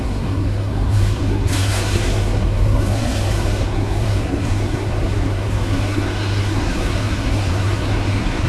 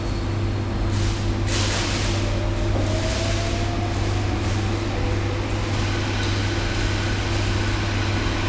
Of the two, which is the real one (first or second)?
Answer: second